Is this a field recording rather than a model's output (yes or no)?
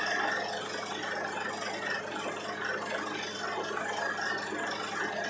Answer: yes